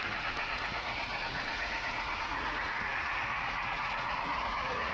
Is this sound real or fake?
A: fake